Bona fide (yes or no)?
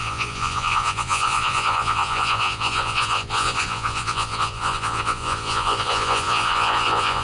no